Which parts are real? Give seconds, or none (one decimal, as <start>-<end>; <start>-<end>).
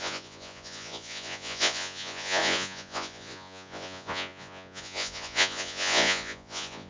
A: none